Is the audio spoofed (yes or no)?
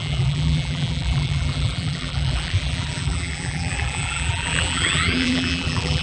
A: yes